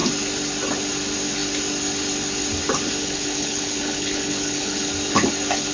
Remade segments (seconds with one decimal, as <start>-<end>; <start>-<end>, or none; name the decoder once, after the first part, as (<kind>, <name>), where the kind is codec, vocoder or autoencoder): 3.0-4.9 (codec, HILCodec)